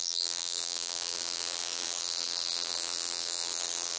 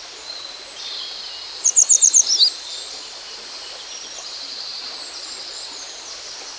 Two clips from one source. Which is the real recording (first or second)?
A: second